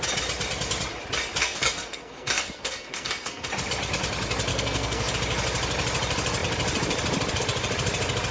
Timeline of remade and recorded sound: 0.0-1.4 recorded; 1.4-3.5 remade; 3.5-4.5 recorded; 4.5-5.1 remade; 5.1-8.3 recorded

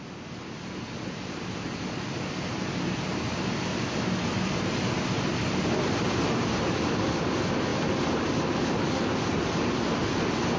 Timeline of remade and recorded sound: 0.0-10.6 recorded

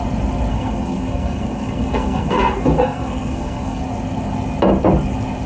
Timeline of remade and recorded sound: 0.0-0.5 recorded; 0.5-3.8 remade; 3.8-5.5 recorded

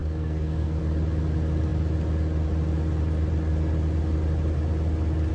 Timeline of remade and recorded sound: 0.0-0.8 remade; 0.8-5.3 recorded

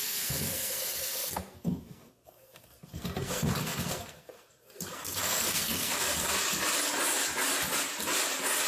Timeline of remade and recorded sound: 0.0-6.3 remade; 6.3-8.7 recorded